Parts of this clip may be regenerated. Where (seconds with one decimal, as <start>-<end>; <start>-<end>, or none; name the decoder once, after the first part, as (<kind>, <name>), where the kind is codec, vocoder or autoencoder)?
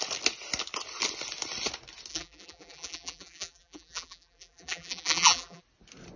2.1-5.6 (vocoder, BigVGAN v2)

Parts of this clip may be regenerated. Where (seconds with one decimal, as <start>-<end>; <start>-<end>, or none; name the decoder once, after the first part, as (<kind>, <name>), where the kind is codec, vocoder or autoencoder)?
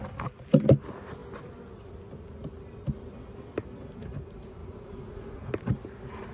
4.6-5.5 (vocoder, Vocos)